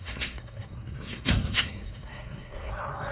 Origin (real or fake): fake